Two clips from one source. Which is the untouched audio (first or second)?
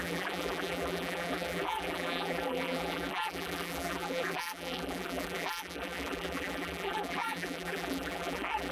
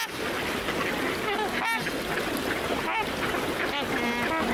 second